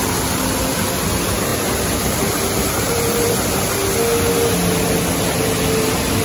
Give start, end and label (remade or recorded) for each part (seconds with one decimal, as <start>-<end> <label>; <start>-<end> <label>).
0.0-1.5 recorded; 1.5-3.3 remade; 3.3-6.2 recorded